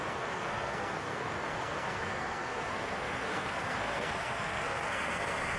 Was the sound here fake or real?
fake